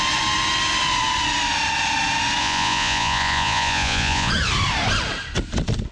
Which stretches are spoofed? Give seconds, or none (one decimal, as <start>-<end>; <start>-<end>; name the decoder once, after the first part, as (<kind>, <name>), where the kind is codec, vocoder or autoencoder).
2.4-4.3 (vocoder, Vocos)